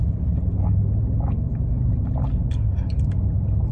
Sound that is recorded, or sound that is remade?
recorded